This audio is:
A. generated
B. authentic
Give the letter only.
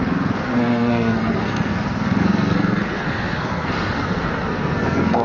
A